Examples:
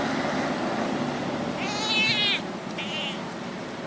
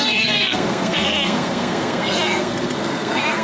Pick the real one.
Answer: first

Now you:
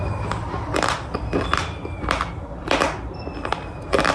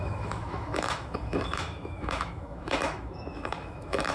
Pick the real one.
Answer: first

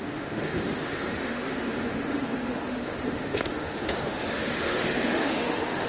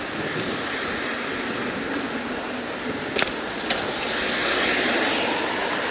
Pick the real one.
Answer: second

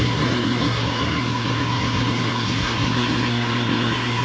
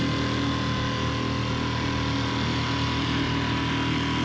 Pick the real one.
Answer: second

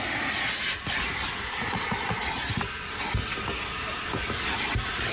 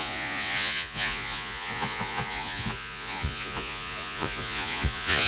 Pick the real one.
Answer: first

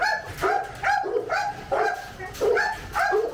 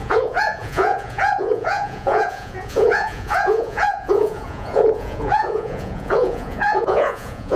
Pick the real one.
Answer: first